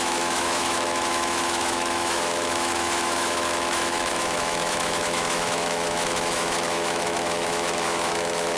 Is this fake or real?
fake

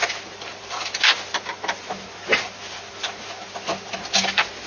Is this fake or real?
real